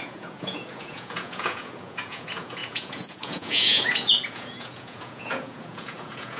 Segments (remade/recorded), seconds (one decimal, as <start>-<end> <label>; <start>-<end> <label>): 0.0-6.4 remade